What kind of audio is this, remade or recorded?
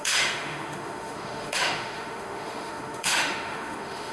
remade